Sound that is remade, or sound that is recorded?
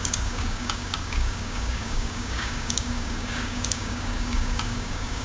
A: remade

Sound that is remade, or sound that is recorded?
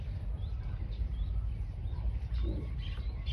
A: recorded